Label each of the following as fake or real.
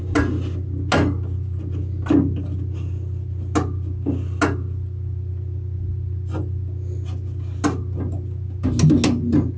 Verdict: real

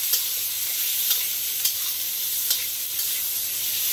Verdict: real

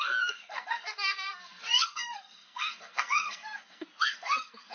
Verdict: fake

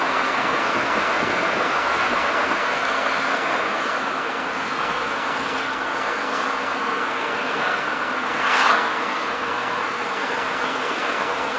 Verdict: fake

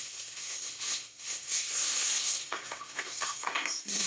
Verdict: fake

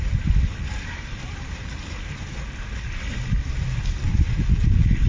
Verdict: real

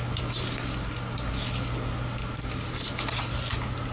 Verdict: real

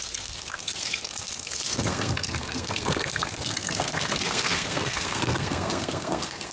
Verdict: fake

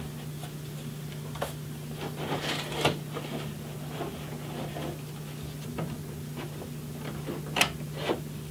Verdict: real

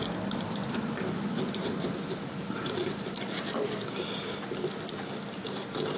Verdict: real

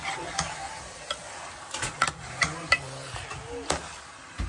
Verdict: real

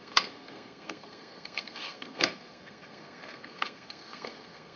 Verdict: fake